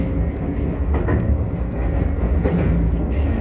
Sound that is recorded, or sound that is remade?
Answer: remade